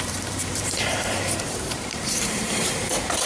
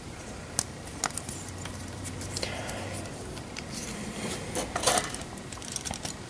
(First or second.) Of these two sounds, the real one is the second